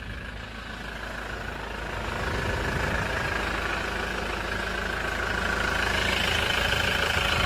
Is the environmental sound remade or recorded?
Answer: recorded